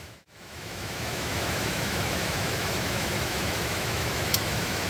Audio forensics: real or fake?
fake